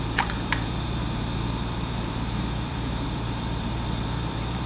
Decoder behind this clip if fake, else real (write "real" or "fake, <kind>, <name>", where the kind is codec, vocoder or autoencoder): fake, vocoder, BigVGAN v2